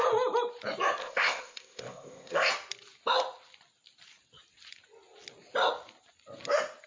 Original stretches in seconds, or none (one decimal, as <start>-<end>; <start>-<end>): 0.0-1.0; 2.5-6.9